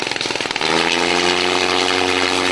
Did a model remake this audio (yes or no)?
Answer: no